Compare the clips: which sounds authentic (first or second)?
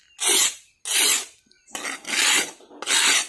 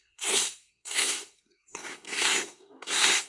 first